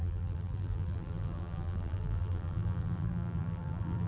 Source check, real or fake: fake